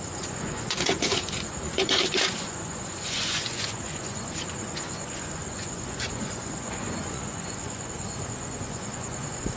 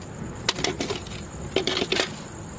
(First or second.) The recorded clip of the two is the second